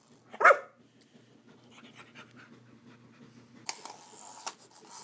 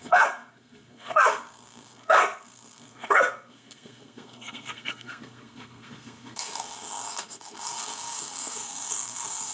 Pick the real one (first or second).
first